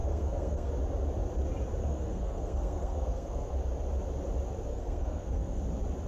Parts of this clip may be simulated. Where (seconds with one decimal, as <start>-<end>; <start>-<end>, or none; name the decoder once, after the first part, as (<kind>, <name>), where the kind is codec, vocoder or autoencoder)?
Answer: 0.0-0.7 (codec, SNAC); 1.8-3.5; 4.7-5.6